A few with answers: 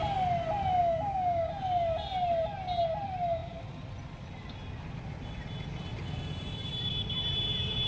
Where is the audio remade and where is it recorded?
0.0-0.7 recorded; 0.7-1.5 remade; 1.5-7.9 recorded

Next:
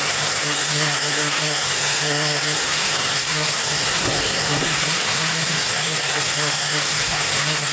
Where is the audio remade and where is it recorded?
0.0-7.7 remade

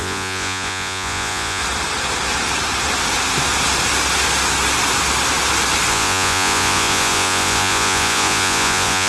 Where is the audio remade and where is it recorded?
0.0-1.6 remade; 1.6-5.9 recorded; 5.9-9.1 remade

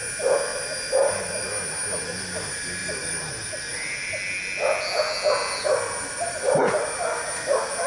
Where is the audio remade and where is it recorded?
0.0-2.8 recorded; 2.8-3.3 remade; 3.3-7.9 recorded

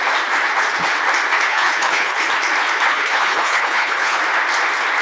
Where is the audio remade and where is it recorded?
0.0-1.5 recorded; 1.5-2.2 remade; 2.2-2.9 recorded; 2.9-4.2 remade; 4.2-5.0 recorded

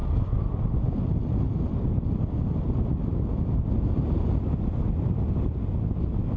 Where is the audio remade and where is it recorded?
0.0-6.4 recorded